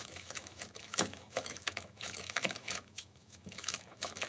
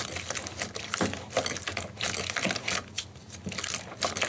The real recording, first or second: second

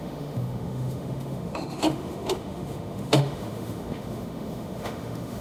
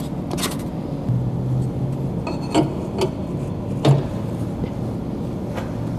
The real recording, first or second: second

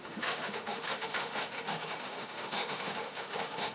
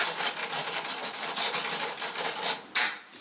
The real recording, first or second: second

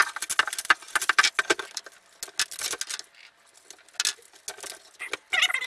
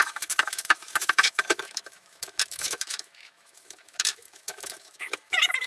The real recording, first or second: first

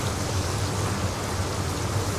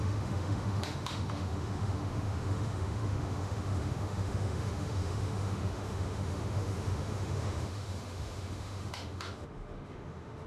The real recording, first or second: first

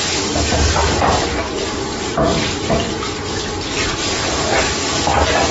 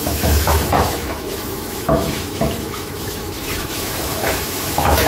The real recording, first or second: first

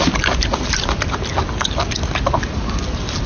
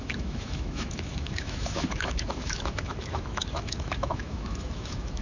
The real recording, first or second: first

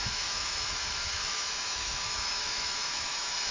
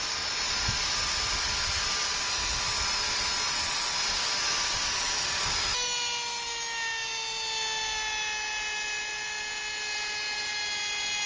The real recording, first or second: second